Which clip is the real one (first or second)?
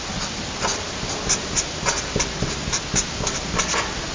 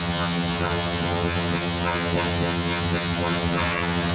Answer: first